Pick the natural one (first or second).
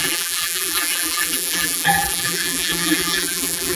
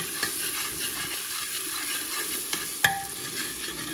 second